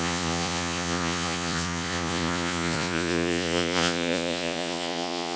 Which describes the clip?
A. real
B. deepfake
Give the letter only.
B